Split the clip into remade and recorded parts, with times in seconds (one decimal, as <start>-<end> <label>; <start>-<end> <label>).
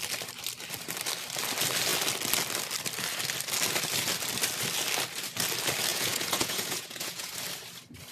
0.0-5.9 recorded; 5.9-7.3 remade; 7.3-8.1 recorded